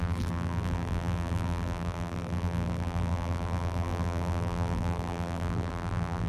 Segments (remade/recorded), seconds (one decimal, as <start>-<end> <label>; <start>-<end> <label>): 0.0-6.3 remade